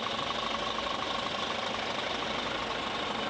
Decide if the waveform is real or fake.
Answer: real